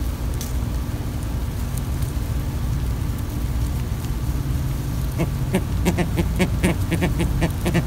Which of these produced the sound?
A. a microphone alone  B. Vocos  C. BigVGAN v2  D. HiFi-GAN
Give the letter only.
A